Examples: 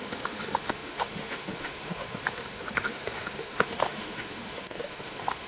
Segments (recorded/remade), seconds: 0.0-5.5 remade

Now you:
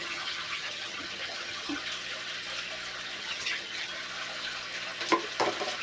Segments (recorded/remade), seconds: 0.0-1.8 remade; 1.8-3.2 recorded; 3.2-4.0 remade; 4.0-5.8 recorded

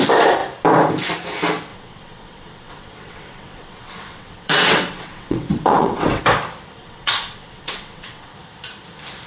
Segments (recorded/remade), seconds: 0.0-1.7 recorded; 1.7-6.2 remade; 6.2-6.8 recorded; 6.8-8.3 remade; 8.3-9.3 recorded

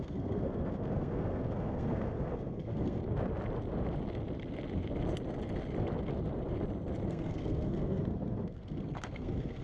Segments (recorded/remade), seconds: 0.0-3.0 remade; 3.0-7.1 recorded; 7.1-9.6 remade

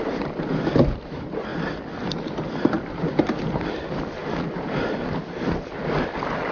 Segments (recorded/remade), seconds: 0.0-1.5 remade; 1.5-2.6 recorded; 2.6-4.2 remade; 4.2-5.9 recorded; 5.9-6.5 remade